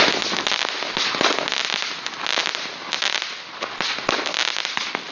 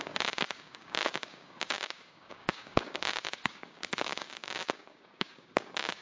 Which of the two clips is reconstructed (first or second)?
second